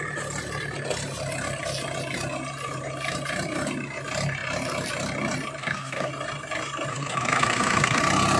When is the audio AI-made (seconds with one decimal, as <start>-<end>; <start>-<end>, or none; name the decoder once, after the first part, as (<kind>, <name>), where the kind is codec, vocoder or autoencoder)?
5.6-6.1 (codec, SNAC); 6.9-8.0